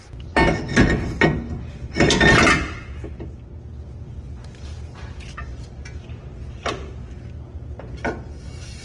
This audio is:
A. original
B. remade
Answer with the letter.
A